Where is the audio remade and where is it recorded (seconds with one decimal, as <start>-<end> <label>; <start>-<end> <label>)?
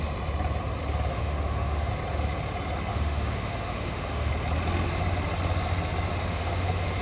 0.0-1.1 recorded; 1.1-1.9 remade; 1.9-2.9 recorded; 2.9-4.3 remade; 4.3-6.1 recorded; 6.1-7.0 remade